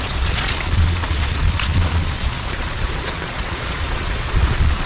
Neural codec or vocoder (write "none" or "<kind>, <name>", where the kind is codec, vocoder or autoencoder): vocoder, Vocos